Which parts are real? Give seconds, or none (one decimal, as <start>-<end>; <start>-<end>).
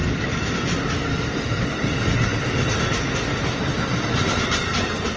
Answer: 0.0-5.2